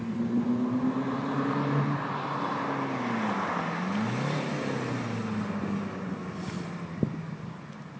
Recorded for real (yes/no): yes